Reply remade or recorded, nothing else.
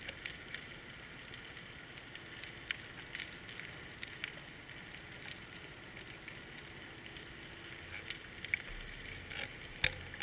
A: recorded